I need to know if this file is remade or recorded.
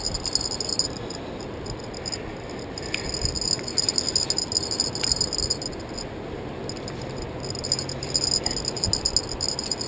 recorded